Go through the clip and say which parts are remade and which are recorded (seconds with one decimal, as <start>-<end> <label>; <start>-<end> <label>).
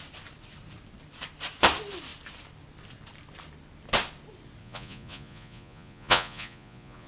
0.0-4.6 recorded; 4.6-7.1 remade